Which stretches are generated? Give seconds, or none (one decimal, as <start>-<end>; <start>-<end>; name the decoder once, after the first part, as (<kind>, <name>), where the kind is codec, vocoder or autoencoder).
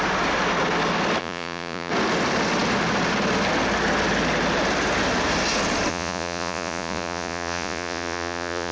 1.2-1.9 (vocoder, Vocos); 5.9-8.7